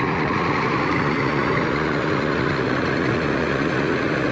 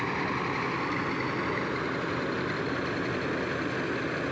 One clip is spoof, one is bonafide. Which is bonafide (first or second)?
second